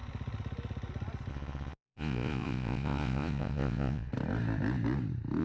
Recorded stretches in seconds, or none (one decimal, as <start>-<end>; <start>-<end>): 0.0-1.3; 4.1-5.4